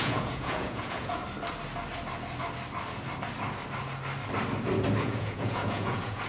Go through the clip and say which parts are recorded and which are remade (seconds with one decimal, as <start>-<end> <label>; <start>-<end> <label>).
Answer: 0.0-1.2 remade; 1.2-5.0 recorded; 5.0-6.3 remade